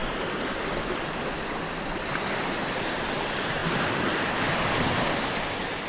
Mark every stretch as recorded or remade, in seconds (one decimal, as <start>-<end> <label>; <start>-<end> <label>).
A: 0.0-5.9 recorded